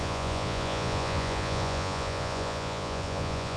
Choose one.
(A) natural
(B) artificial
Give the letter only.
B